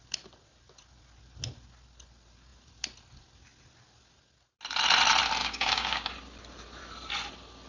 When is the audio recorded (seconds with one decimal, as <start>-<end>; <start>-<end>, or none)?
0.0-5.4; 6.1-7.7